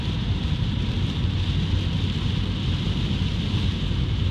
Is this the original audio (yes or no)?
yes